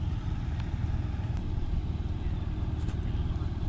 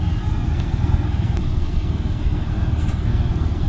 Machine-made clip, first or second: second